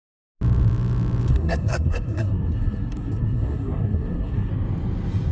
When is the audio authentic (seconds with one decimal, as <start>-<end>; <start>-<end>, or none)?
0.0-1.3; 4.5-5.3